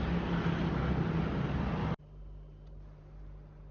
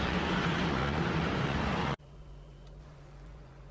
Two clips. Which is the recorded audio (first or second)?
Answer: first